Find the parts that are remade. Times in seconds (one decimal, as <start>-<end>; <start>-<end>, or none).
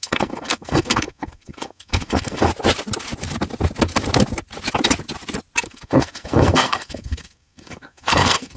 0.0-2.5; 5.6-8.6